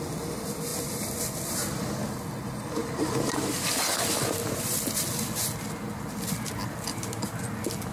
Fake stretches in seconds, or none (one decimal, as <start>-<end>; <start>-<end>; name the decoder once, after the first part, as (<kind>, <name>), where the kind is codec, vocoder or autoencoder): none